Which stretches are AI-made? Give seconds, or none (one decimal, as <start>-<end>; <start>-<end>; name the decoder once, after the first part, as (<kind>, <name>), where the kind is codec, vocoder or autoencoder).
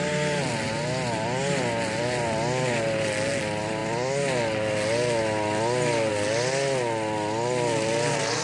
none